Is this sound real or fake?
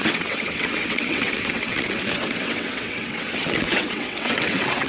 fake